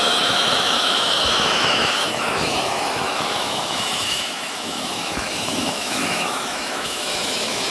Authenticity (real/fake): fake